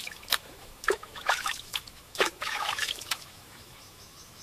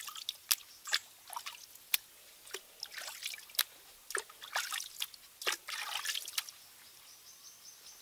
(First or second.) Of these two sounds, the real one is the second